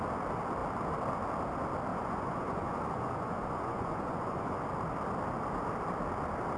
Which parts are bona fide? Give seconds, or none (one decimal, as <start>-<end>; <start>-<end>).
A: 0.0-1.9; 4.6-6.6